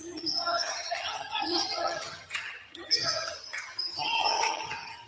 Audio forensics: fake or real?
fake